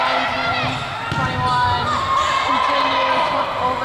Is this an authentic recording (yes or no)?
yes